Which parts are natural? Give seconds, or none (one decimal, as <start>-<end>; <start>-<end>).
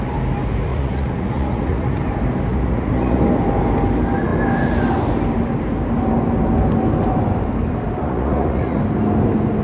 0.0-0.7; 2.0-2.5; 3.2-8.0; 8.8-9.6